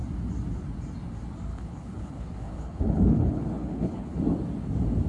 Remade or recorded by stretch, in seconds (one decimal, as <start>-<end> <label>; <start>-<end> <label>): 0.0-1.5 recorded; 1.5-4.2 remade; 4.2-5.1 recorded